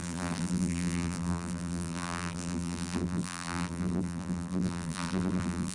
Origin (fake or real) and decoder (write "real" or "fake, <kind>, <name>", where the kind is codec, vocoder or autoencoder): fake, vocoder, BigVGAN v2